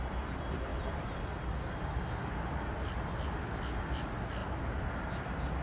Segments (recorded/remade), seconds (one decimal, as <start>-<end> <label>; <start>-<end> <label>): 0.0-5.6 recorded